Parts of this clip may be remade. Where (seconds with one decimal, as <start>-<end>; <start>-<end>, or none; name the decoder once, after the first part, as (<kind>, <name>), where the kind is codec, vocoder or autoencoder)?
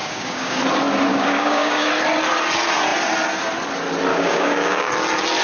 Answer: 0.0-0.6 (codec, DAC); 1.1-1.9; 4.1-4.9